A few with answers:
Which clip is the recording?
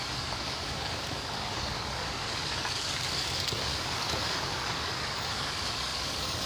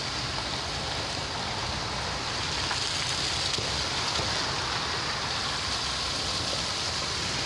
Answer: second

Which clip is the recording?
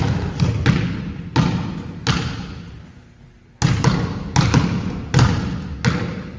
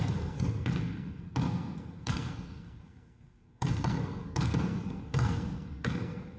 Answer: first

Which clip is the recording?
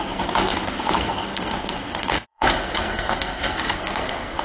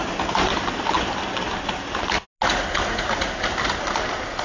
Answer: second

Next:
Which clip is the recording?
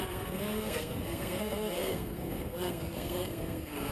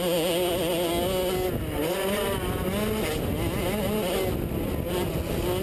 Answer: second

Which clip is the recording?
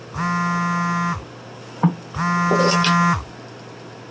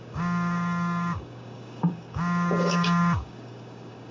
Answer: first